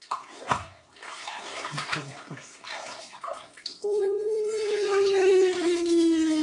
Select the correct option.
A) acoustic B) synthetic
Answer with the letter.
B